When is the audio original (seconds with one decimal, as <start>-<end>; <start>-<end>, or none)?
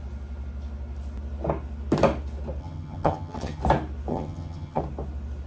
0.0-2.6; 3.6-4.1; 4.8-5.5